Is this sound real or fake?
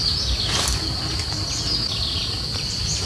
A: real